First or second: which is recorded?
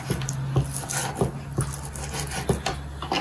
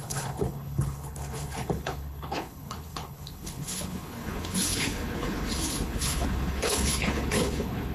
first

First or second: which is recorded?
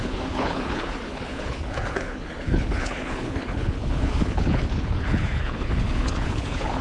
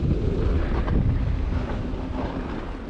second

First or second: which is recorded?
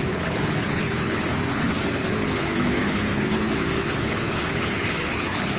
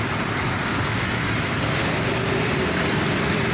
second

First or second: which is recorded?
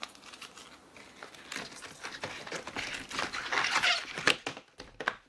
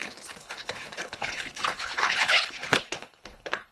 first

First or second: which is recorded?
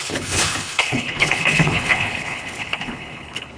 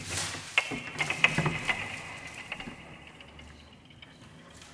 second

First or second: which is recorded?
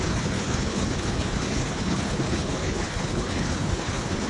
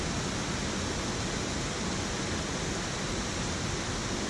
second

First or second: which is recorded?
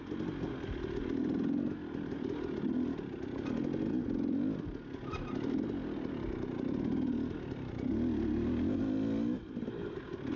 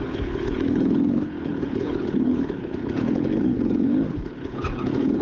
first